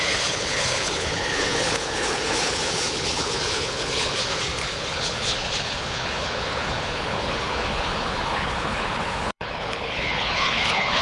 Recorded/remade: remade